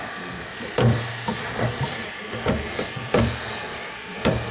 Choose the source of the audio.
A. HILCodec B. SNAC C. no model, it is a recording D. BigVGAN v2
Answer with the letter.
D